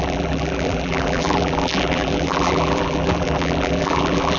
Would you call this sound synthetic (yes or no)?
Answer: yes